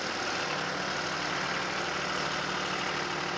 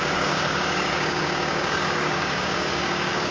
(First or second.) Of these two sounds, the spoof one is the second